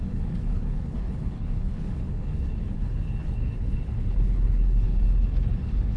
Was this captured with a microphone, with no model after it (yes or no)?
no